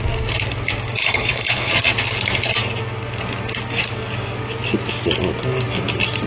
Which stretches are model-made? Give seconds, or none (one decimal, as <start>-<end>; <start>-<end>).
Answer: 1.0-1.7